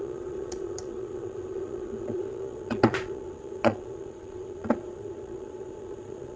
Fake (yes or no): yes